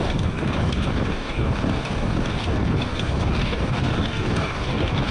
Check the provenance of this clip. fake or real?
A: fake